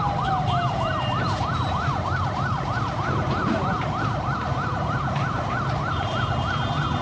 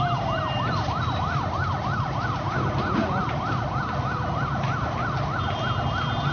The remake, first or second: first